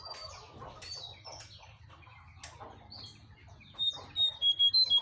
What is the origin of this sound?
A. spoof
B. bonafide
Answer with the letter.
B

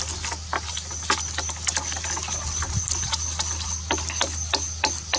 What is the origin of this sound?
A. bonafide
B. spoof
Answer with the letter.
A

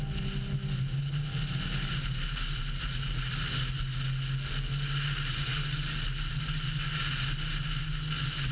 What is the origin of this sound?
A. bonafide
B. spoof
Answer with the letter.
A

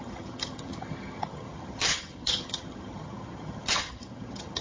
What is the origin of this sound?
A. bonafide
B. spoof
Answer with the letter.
B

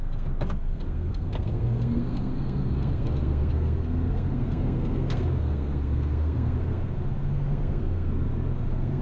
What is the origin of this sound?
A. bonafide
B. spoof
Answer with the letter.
B